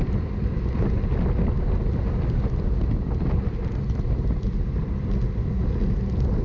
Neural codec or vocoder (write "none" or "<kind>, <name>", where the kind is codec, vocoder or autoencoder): none